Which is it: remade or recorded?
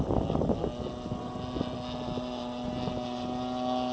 recorded